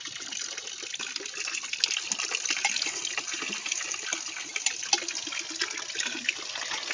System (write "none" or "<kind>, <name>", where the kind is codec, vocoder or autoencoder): none